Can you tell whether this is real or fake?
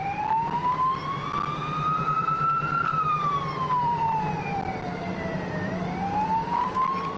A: fake